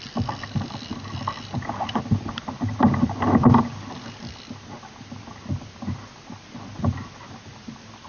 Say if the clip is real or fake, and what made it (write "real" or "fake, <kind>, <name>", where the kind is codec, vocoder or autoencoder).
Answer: real